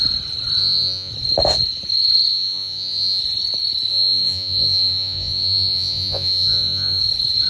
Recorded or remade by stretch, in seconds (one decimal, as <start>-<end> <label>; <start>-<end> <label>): 0.0-0.6 recorded; 0.6-1.1 remade; 1.1-2.3 recorded; 2.3-3.2 remade; 3.2-3.9 recorded; 3.9-7.0 remade; 7.0-7.5 recorded